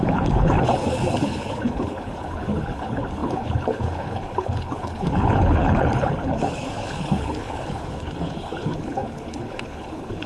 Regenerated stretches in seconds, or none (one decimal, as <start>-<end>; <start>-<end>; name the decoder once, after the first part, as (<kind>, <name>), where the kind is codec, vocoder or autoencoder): 0.0-10.3 (codec, HILCodec)